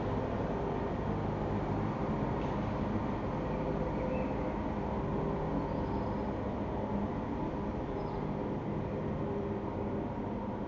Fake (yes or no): no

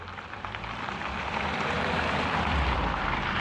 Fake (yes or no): yes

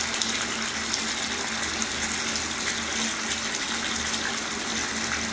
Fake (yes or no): no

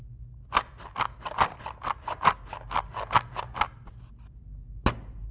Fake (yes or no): no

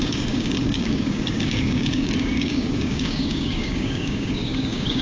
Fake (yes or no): yes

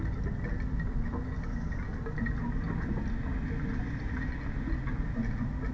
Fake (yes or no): no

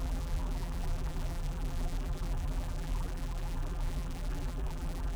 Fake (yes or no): yes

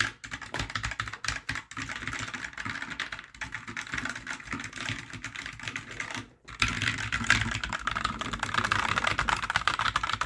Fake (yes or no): no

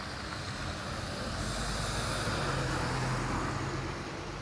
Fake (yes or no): no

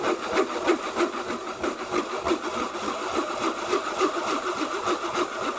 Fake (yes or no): no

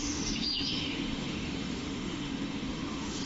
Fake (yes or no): yes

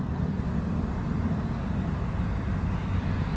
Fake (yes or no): no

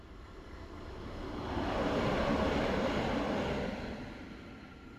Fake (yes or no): no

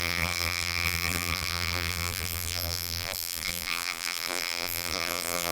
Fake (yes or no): yes